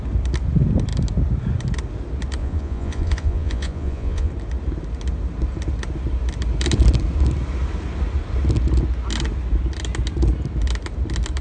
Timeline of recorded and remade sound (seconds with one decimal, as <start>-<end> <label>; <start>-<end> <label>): 0.0-2.4 recorded; 2.4-4.3 remade; 4.3-11.4 recorded